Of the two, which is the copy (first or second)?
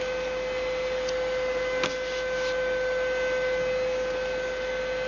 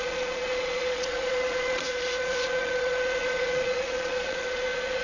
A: second